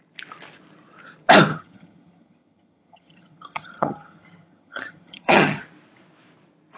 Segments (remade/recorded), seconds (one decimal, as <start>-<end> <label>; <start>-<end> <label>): 0.0-1.5 recorded; 1.5-5.6 remade; 5.6-6.8 recorded